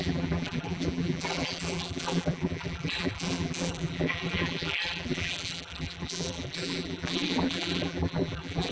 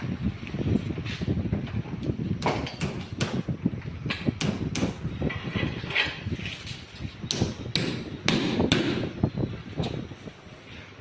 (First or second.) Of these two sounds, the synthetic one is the first